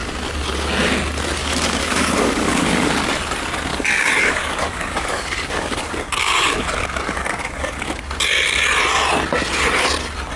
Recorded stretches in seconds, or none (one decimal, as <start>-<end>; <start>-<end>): 0.0-1.4; 2.9-3.7; 8.0-10.4